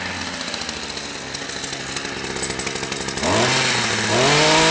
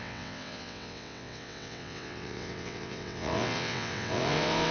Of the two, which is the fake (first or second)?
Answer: second